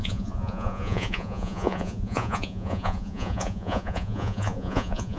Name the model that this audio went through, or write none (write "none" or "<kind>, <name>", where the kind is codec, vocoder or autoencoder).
vocoder, Vocos